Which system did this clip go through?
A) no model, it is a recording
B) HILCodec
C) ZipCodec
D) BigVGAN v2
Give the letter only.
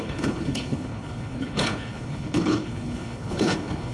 B